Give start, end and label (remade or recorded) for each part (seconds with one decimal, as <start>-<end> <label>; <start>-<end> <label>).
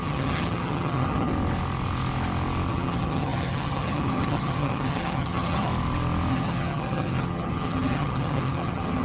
0.0-1.3 remade; 1.3-2.7 recorded; 2.7-5.7 remade; 5.7-6.3 recorded; 6.3-9.0 remade